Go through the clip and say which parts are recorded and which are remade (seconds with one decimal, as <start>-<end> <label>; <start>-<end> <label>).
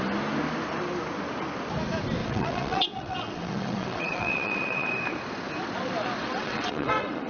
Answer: 0.0-2.2 recorded; 2.2-4.9 remade; 4.9-6.2 recorded; 6.2-7.3 remade